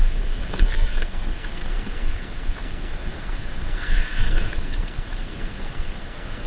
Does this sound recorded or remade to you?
remade